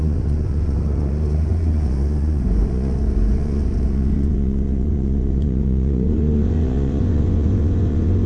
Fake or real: fake